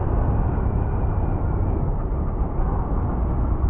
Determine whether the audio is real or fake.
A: real